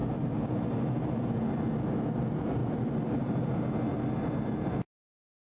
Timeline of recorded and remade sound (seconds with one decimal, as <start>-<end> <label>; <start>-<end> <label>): 0.0-0.9 remade; 0.9-2.6 recorded; 2.6-3.5 remade; 3.5-3.9 recorded; 3.9-5.4 remade